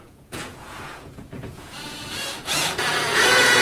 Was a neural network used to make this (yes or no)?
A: yes